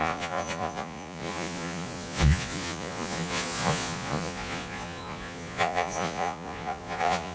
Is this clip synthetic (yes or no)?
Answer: yes